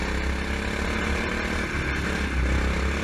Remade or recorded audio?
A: recorded